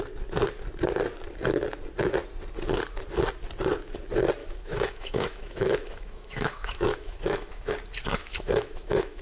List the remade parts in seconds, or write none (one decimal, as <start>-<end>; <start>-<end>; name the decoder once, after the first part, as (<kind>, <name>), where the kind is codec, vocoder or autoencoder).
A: 4.4-7.7 (autoencoder, DAC-VAE); 8.2-9.2